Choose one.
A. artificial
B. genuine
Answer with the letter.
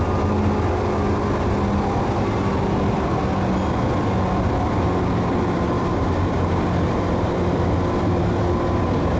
B